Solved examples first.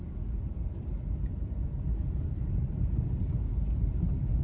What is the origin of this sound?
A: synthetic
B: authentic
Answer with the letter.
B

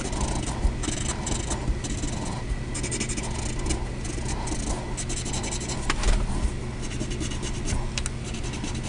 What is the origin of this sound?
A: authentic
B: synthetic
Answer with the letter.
A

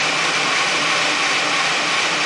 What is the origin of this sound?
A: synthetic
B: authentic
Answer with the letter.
A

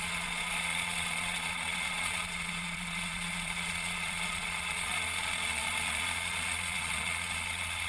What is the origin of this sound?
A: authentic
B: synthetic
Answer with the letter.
B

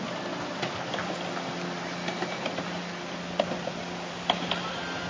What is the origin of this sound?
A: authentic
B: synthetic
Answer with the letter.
A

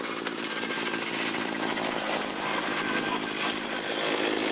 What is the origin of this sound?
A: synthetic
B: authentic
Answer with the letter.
B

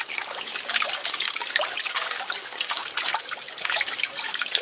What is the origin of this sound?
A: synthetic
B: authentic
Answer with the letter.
A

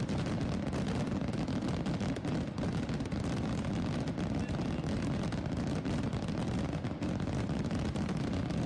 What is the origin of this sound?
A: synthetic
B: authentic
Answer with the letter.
B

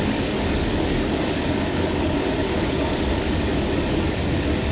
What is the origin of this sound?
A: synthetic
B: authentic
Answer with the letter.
A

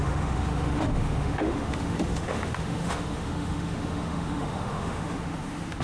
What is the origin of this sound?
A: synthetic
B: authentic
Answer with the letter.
A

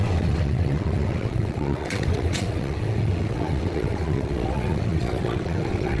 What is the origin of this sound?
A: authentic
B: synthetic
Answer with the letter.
B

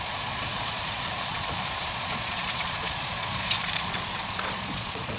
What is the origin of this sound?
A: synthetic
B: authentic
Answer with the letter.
A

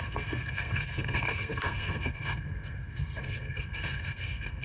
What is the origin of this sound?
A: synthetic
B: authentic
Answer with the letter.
A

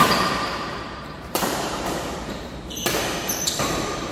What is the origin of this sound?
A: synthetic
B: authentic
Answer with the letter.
A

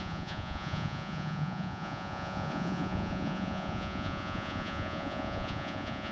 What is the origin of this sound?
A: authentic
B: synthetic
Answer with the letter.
B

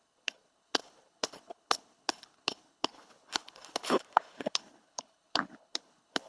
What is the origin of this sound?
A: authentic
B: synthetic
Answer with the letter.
B